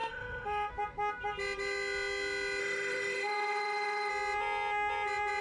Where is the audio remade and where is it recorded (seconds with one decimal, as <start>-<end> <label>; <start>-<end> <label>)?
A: 0.0-0.7 remade; 0.7-2.6 recorded; 2.6-4.1 remade; 4.1-5.4 recorded